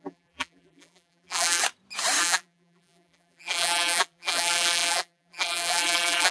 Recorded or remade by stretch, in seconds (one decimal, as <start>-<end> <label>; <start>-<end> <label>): 0.0-1.6 remade; 1.6-2.2 recorded; 2.2-6.3 remade